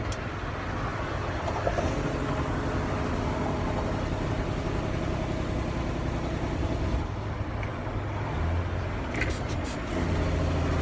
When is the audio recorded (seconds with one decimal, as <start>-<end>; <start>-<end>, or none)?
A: 0.0-10.8